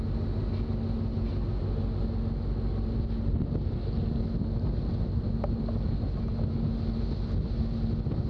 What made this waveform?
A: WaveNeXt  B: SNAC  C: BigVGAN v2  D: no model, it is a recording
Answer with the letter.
D